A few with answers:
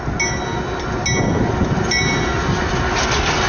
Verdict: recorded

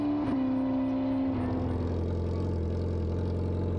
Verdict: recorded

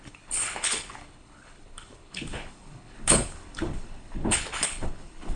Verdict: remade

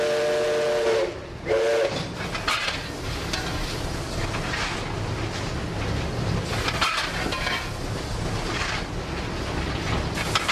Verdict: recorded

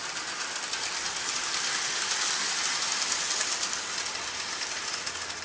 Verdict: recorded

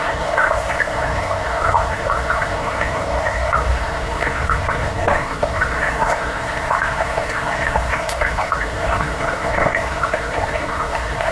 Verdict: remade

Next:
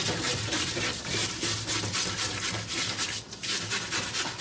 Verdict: recorded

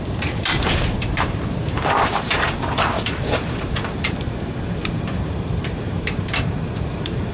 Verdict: remade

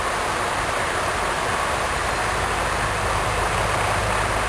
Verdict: recorded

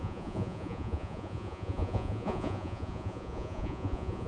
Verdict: remade